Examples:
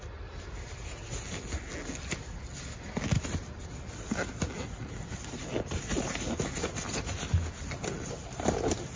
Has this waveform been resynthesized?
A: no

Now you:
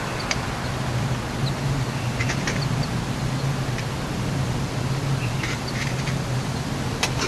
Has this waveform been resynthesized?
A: no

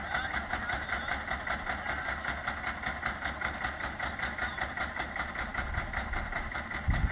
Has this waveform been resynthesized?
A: no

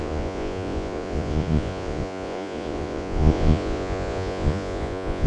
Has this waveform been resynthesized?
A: yes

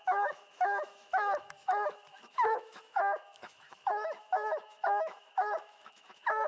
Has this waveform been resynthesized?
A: yes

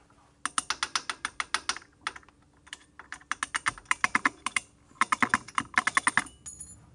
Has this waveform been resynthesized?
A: no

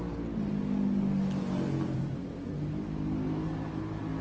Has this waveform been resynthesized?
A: no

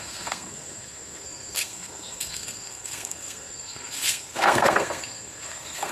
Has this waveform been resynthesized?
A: yes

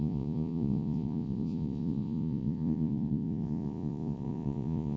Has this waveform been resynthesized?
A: yes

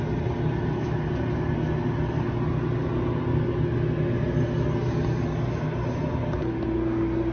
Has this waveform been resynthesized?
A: no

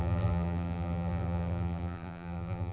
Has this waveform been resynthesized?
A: yes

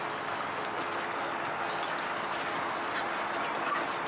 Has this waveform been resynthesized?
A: no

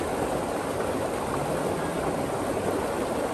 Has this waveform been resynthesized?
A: no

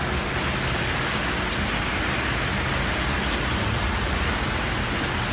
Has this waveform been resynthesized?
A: no